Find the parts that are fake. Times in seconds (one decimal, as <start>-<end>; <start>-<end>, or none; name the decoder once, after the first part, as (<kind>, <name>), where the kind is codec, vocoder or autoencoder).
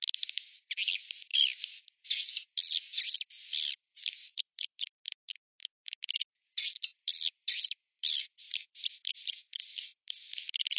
4.3-5.0 (vocoder, BigVGAN v2)